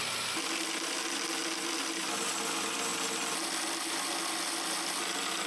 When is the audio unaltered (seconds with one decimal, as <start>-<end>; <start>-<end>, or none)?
0.0-5.5